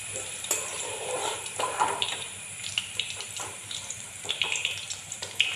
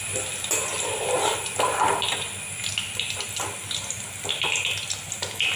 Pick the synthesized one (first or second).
first